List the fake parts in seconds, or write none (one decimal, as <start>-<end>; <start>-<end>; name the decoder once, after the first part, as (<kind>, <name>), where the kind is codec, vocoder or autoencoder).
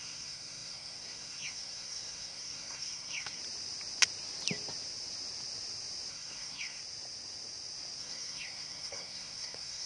0.0-3.4 (codec, SNAC); 6.1-6.8; 8.0-9.9